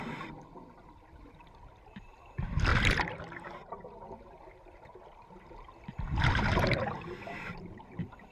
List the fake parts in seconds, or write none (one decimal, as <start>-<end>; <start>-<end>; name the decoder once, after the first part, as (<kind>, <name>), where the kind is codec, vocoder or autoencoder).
0.0-2.7 (vocoder, BigVGAN v2); 6.3-8.3